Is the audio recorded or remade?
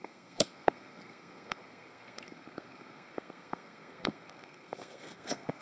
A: remade